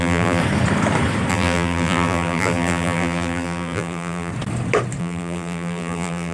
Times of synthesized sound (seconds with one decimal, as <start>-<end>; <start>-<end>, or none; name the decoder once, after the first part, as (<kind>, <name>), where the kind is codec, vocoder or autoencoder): 0.0-0.4 (vocoder, BigVGAN v2); 1.3-4.3; 5.0-6.3